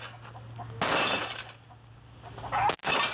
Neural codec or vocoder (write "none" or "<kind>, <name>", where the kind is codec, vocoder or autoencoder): none